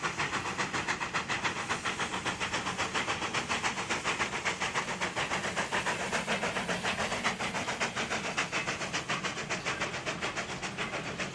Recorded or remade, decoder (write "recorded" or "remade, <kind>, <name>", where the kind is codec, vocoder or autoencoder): recorded